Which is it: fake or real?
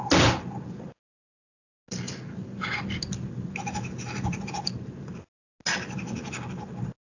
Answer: real